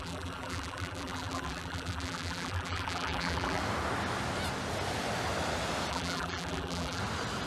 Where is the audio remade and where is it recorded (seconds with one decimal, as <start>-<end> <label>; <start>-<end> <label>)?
0.0-3.6 remade; 3.6-5.9 recorded; 5.9-7.0 remade; 7.0-7.5 recorded